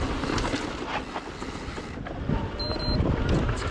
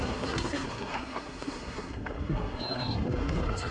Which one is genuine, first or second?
first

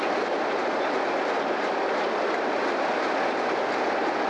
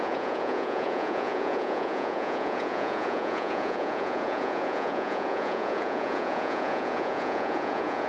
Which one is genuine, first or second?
first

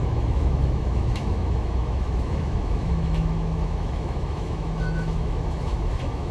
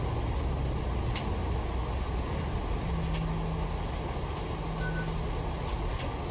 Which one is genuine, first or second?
second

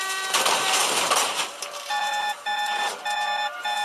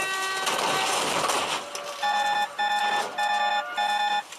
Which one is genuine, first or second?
second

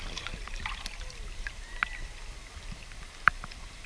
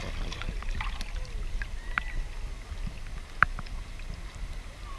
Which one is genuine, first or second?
second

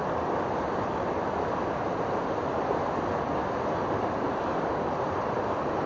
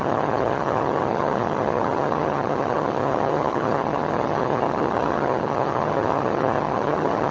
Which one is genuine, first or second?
first